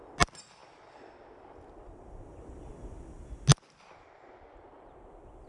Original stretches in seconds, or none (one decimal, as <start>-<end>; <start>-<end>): 0.0-5.5